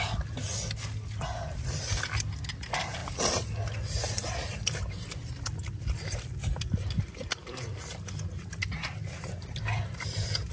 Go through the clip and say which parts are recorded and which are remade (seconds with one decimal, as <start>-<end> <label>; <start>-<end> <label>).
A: 0.0-10.5 recorded